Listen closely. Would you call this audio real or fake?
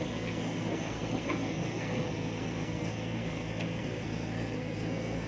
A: fake